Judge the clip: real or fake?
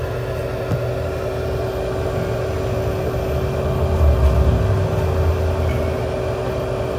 real